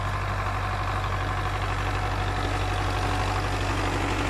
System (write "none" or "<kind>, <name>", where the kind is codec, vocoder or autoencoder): none